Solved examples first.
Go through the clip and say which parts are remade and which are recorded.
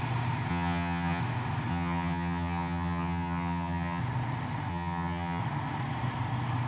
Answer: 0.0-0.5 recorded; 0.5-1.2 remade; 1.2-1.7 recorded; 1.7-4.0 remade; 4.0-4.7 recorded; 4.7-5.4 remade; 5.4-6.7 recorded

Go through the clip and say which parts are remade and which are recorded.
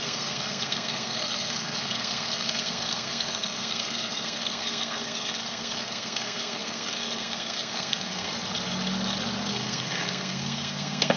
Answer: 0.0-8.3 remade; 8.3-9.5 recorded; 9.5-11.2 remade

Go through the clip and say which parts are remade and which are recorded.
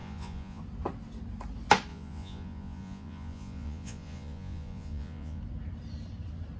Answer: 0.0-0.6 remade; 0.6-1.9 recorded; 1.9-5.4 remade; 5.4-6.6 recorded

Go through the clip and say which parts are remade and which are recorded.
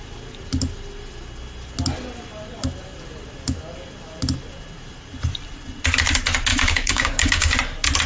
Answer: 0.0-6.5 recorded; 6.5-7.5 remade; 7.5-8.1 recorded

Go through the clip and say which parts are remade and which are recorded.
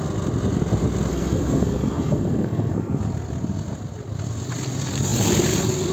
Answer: 0.0-1.1 recorded; 1.1-3.0 remade; 3.0-5.9 recorded